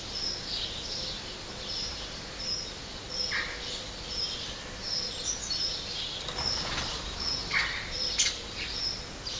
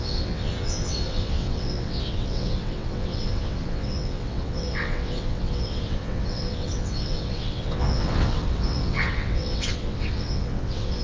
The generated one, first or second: second